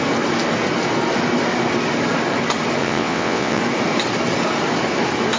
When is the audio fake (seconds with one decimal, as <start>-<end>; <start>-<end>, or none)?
2.8-3.6